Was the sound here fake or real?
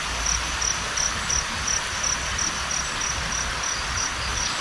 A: real